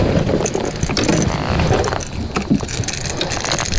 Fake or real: real